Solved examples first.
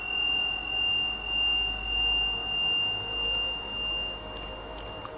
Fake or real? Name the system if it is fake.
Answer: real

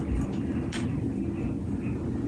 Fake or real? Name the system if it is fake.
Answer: real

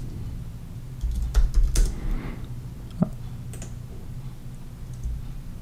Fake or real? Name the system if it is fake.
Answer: real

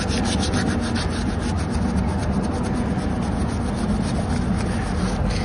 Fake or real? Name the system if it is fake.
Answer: real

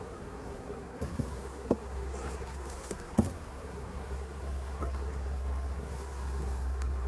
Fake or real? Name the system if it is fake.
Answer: fake, codec, SNAC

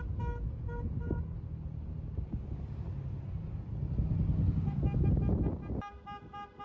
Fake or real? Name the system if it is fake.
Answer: real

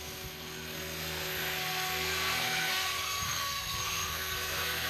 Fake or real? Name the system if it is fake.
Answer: fake, codec, SNAC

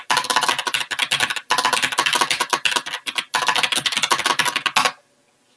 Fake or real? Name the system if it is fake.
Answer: real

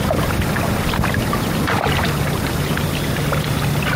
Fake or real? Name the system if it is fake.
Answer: real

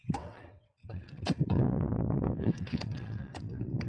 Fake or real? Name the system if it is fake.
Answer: fake, vocoder, WaveNeXt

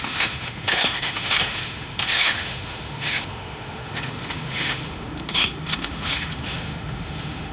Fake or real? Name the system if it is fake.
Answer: fake, autoencoder, DAC-VAE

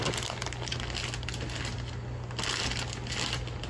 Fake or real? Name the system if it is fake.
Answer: real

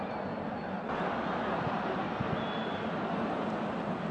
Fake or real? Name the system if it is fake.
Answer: real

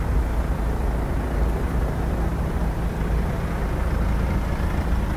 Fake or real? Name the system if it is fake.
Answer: real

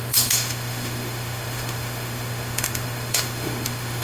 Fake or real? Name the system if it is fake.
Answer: fake, autoencoder, DAC-VAE